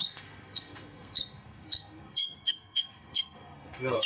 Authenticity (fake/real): fake